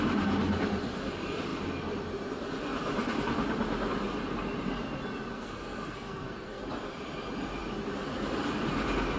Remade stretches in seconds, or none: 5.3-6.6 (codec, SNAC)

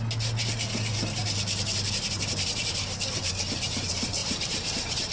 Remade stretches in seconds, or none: 1.2-3.3 (vocoder, BigVGAN v2); 4.2-5.1

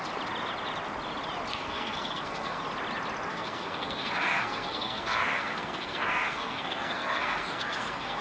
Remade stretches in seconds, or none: 1.5-2.6 (codec, SNAC); 3.3-8.2

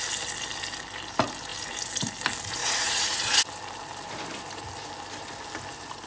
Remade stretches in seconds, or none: 2.6-3.4 (vocoder, Vocos)

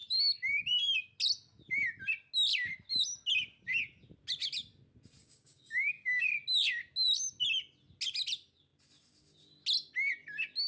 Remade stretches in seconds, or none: 5.2-6.3 (codec, DAC)

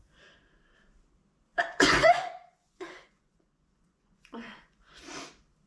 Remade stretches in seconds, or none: 1.5-4.9 (vocoder, Vocos)

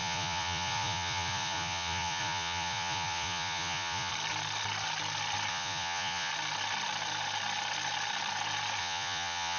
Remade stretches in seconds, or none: 0.0-4.1 (vocoder, Vocos); 5.5-6.3; 8.8-9.6